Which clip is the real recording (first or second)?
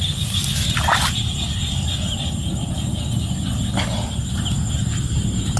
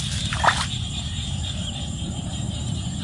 first